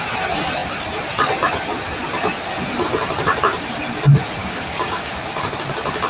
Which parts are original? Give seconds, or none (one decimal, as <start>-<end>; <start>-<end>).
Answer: 0.0-4.4; 5.1-6.1